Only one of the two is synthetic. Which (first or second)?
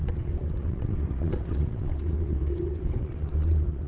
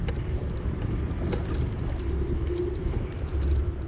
first